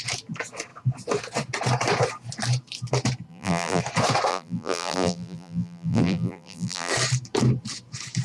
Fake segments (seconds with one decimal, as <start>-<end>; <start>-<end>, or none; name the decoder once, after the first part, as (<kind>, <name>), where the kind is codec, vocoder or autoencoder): 3.3-3.8 (vocoder, BigVGAN v2); 4.3-6.9